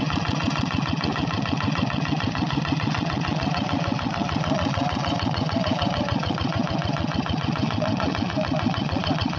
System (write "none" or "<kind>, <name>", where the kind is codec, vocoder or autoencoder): vocoder, Vocos